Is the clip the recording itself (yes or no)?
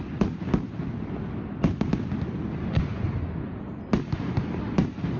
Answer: yes